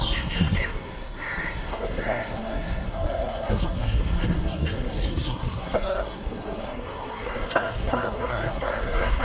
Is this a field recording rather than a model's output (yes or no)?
no